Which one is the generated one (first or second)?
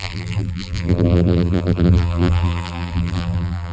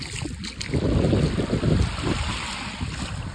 first